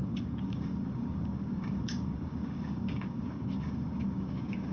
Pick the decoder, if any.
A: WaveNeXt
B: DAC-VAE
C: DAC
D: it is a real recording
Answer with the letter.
C